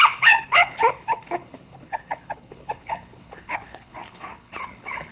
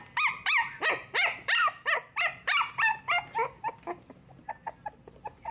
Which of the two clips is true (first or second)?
second